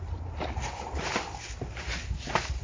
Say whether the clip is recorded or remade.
recorded